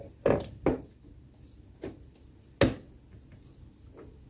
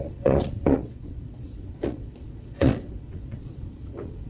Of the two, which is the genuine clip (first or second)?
first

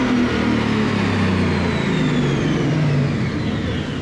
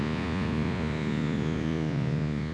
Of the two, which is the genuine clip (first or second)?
first